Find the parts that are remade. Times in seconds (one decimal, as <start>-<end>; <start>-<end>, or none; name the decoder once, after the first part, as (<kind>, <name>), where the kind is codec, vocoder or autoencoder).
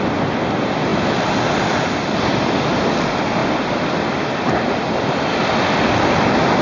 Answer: 3.4-5.0 (vocoder, BigVGAN v2)